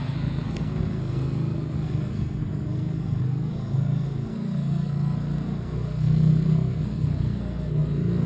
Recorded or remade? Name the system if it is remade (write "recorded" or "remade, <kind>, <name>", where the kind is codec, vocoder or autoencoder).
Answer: remade, codec, SNAC